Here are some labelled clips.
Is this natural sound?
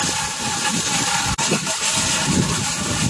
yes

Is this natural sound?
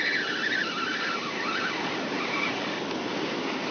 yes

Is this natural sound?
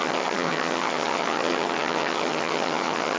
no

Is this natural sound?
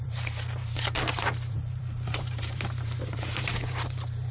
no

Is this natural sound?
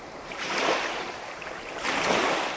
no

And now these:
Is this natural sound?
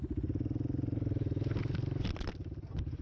yes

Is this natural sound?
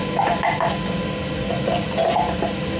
yes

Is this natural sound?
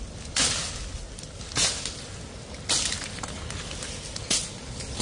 yes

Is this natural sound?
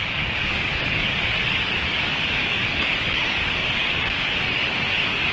no